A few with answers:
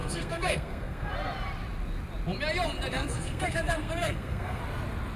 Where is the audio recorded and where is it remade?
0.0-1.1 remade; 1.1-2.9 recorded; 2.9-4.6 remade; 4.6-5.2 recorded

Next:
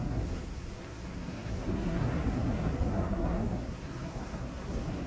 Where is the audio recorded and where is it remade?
0.0-5.1 remade

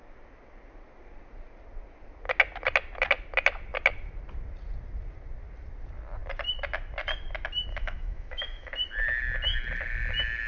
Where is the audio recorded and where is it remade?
0.0-7.7 recorded; 7.7-8.7 remade; 8.7-10.5 recorded

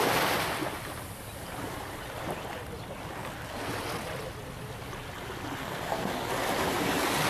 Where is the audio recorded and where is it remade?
0.0-3.2 recorded; 3.2-3.7 remade; 3.7-5.6 recorded; 5.6-6.3 remade; 6.3-7.3 recorded

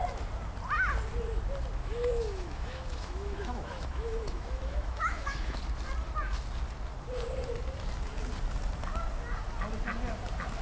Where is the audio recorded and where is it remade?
0.0-1.8 recorded; 1.8-5.6 remade; 5.6-10.6 recorded